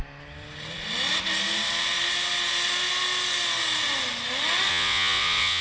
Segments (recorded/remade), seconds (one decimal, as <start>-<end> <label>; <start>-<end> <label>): 0.0-4.7 recorded; 4.7-5.6 remade